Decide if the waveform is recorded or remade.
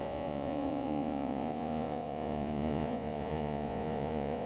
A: remade